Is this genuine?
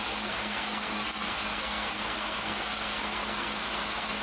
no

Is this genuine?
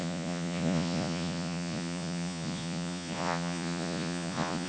no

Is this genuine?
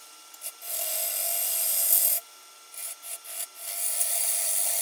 yes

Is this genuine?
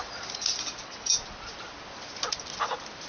yes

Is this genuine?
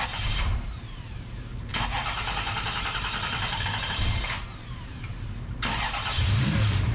no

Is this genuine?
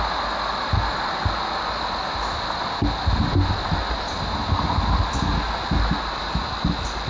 yes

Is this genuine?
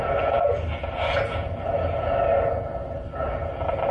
yes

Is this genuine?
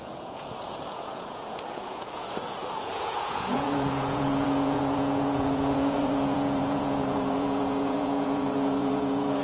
no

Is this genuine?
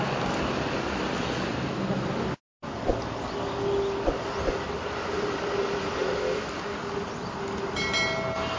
yes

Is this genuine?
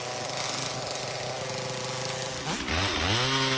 yes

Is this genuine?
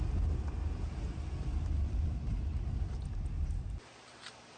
yes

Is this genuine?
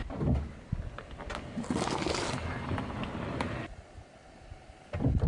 yes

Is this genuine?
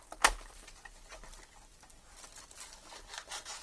yes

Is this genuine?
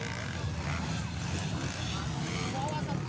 yes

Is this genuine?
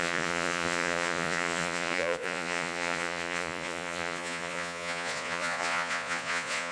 no